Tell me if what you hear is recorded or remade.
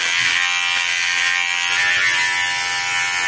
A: recorded